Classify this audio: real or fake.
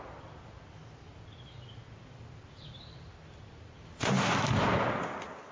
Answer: real